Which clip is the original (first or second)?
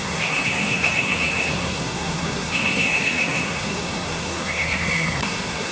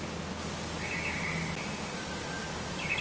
second